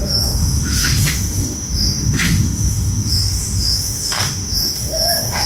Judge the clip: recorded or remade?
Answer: remade